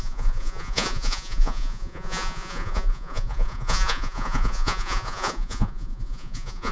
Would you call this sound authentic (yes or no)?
no